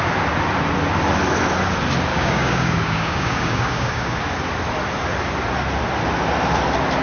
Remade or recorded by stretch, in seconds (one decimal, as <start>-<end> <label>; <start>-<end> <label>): 0.0-2.1 recorded; 2.1-4.2 remade; 4.2-7.0 recorded